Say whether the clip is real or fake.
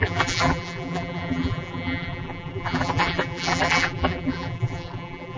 fake